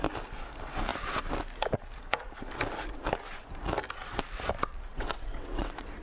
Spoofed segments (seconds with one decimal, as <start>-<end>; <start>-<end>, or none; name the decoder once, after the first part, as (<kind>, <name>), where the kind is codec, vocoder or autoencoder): 4.9-6.0 (vocoder, WaveNeXt)